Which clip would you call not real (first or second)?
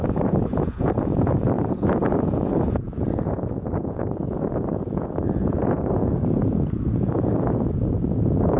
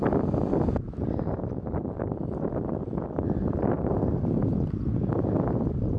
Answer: first